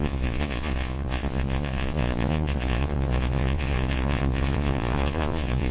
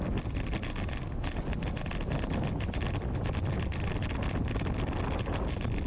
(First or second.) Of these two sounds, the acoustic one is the second